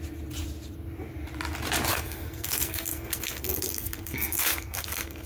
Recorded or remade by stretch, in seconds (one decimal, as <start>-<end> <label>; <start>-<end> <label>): 0.0-1.9 recorded; 1.9-5.3 remade